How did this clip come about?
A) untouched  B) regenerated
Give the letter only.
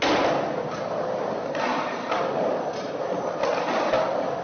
A